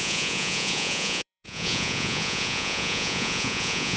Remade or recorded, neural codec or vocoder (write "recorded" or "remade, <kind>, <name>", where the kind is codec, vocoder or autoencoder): remade, vocoder, Vocos